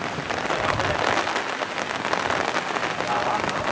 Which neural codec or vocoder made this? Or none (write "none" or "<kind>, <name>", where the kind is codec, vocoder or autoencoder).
none